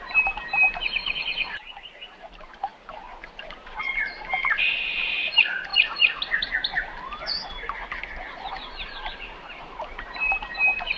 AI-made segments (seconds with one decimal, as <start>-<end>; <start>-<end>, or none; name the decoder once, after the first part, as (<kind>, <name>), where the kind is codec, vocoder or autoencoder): 1.0-1.6 (vocoder, Vocos)